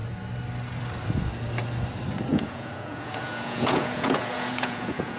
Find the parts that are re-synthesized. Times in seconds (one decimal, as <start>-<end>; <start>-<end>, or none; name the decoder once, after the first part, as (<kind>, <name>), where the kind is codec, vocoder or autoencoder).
2.3-5.2 (vocoder, Vocos)